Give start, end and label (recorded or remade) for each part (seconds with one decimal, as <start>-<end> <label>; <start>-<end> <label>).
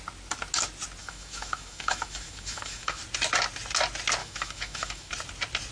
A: 0.0-1.0 recorded; 1.0-3.0 remade; 3.0-4.2 recorded; 4.2-5.1 remade; 5.1-5.7 recorded